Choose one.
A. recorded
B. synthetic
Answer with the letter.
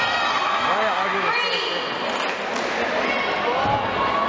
A